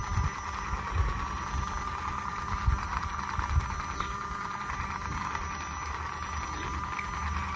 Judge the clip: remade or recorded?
recorded